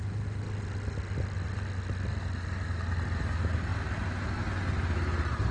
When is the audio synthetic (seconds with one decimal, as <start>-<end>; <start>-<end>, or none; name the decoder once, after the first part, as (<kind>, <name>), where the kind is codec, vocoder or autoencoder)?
none